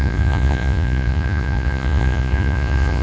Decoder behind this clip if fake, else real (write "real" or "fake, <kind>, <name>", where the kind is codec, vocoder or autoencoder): fake, vocoder, Vocos